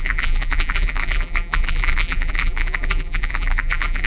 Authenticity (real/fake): fake